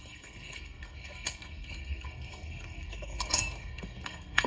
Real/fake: fake